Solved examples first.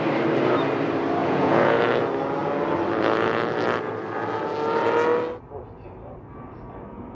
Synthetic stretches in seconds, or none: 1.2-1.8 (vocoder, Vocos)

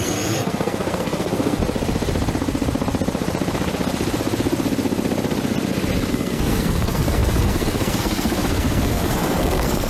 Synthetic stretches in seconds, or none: 0.0-1.6 (codec, SNAC); 6.1-9.9

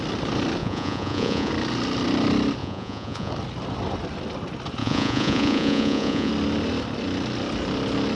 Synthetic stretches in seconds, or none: 0.6-1.5 (vocoder, Vocos); 2.6-3.3; 4.8-6.3

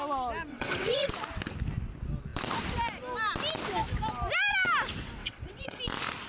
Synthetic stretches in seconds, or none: 0.5-1.1 (vocoder, WaveNeXt); 5.2-5.8

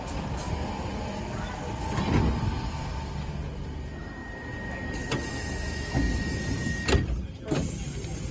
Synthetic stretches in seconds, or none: none